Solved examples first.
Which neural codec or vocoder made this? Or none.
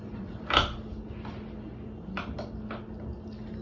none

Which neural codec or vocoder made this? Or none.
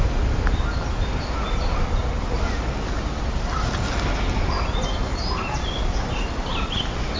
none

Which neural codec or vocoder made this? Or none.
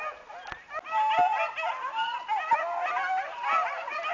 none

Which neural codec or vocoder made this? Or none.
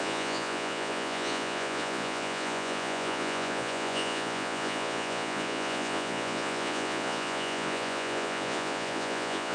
vocoder, Vocos